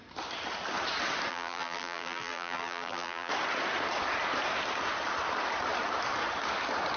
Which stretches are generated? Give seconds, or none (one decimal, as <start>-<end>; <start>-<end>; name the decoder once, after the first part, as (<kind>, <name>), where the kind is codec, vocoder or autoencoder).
1.3-3.3 (vocoder, BigVGAN v2)